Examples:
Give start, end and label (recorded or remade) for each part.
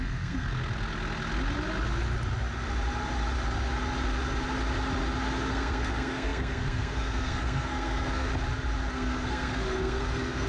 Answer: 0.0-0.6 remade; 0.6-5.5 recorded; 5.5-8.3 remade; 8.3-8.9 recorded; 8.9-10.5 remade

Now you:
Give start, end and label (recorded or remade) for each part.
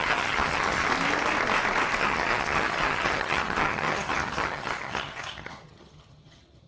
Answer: 0.0-0.9 remade; 0.9-2.0 recorded; 2.0-6.7 remade